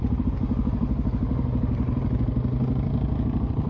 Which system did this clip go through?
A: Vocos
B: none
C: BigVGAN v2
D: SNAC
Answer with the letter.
B